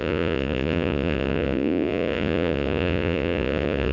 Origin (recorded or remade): remade